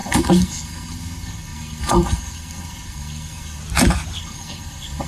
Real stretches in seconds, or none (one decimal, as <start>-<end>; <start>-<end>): 3.6-4.2

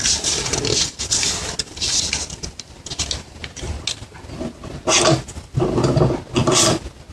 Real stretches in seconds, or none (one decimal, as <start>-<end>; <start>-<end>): 0.0-7.1

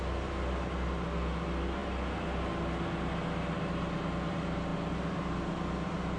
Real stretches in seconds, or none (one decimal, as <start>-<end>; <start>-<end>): 0.0-6.2